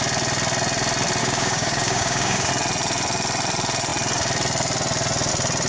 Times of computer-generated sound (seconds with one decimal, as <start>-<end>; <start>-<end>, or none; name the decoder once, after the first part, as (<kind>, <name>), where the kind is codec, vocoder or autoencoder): 1.2-2.5 (codec, DAC)